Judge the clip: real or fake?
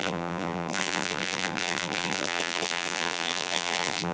fake